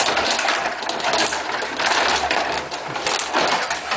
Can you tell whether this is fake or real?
real